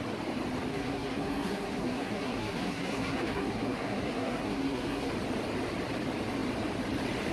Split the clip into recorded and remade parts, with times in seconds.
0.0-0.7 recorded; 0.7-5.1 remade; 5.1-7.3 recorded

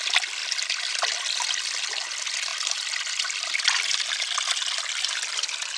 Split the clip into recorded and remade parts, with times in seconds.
0.0-5.8 recorded

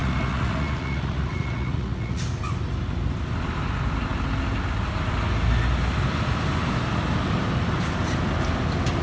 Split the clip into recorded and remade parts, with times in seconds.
0.0-2.2 remade; 2.2-9.0 recorded

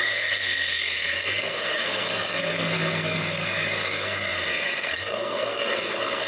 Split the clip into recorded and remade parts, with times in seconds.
0.0-6.3 remade

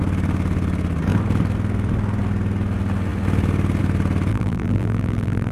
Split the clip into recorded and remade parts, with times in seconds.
0.0-4.3 recorded; 4.3-5.5 remade

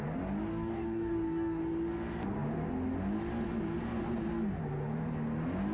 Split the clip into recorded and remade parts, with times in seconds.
0.0-0.5 recorded; 0.5-1.6 remade; 1.6-5.7 recorded

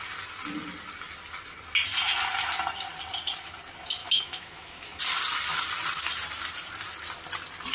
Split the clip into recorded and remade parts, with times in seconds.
0.0-4.0 recorded; 4.0-5.0 remade; 5.0-7.7 recorded

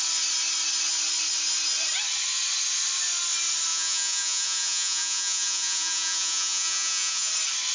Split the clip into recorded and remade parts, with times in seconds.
0.0-3.7 recorded; 3.7-7.3 remade; 7.3-7.7 recorded